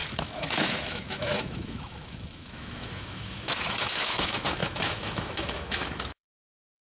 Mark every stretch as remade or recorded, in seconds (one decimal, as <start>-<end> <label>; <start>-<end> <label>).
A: 0.0-6.8 remade